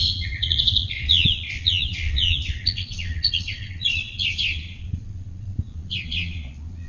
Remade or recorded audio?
remade